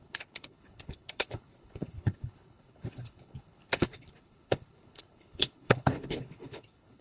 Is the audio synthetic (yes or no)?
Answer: yes